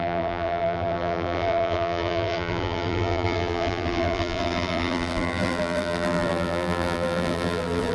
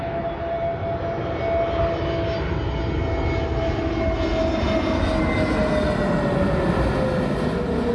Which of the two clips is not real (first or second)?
first